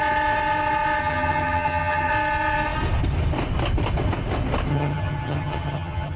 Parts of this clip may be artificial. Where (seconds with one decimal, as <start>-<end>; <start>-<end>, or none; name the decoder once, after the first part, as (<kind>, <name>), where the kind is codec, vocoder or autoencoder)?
1.0-2.1 (vocoder, HiFi-GAN); 4.7-6.2